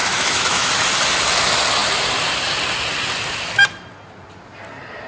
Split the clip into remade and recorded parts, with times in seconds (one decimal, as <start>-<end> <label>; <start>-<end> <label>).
0.0-0.7 remade; 0.7-5.1 recorded